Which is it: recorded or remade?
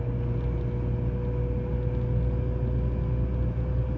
recorded